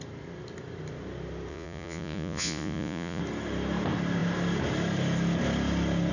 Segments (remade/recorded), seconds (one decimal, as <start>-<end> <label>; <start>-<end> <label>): 0.0-1.5 recorded; 1.5-3.2 remade; 3.2-6.1 recorded